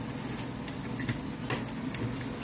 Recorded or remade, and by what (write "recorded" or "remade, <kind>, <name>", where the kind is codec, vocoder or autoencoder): recorded